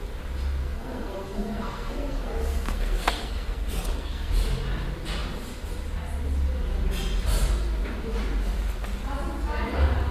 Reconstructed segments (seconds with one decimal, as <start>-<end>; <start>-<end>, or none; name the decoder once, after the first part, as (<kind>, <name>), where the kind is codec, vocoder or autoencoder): 0.6-4.3 (codec, SNAC)